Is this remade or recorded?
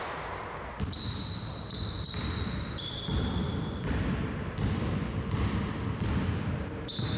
recorded